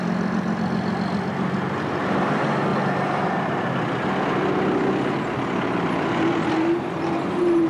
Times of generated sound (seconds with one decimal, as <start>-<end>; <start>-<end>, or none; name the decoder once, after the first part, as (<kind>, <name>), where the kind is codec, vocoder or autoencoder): none